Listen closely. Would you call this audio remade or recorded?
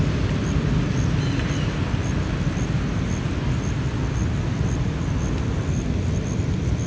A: recorded